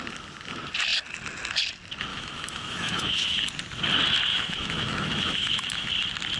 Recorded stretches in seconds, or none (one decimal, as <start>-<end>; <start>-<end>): 0.0-2.1; 3.5-4.3; 5.9-6.4